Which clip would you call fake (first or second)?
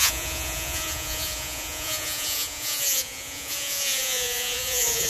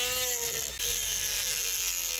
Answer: first